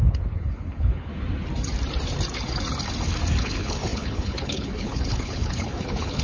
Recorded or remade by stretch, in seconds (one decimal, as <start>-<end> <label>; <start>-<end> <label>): 0.0-1.1 remade; 1.1-3.4 recorded; 3.4-6.2 remade